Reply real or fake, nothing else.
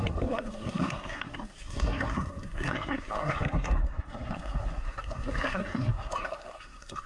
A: fake